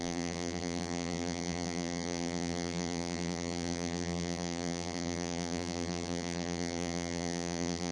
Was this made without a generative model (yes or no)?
no